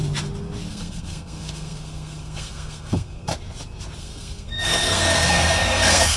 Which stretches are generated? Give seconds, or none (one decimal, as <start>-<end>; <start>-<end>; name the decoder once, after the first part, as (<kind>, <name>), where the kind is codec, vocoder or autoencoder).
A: 0.7-3.3 (codec, SNAC); 4.0-6.2